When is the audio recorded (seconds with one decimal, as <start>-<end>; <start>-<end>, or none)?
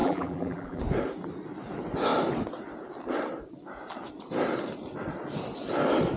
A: 0.8-6.2